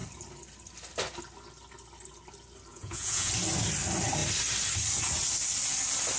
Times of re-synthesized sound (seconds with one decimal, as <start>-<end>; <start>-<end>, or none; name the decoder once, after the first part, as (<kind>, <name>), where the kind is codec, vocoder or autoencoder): 2.7-3.3 (vocoder, Vocos)

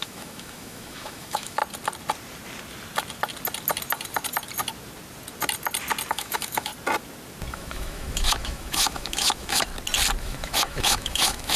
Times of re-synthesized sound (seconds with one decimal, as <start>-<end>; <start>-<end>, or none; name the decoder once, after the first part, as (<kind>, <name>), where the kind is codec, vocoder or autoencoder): 0.0-1.6 (autoencoder, DAC-VAE); 6.1-6.7; 7.5-9.7; 10.2-11.6